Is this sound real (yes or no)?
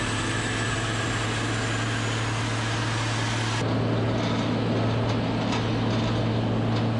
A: yes